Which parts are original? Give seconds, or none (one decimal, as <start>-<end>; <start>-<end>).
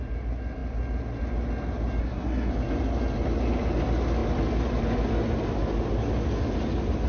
0.0-2.0; 2.5-7.1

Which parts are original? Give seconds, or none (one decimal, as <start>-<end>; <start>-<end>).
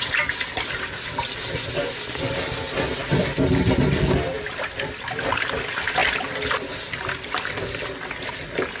0.0-8.8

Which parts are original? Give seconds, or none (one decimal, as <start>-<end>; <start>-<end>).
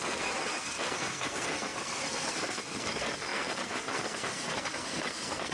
none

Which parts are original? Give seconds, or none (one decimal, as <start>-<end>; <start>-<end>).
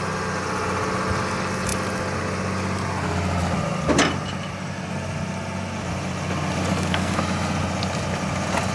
0.0-6.7; 7.2-8.7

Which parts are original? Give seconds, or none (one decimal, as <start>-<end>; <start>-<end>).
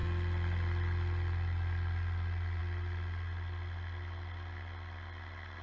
0.0-5.6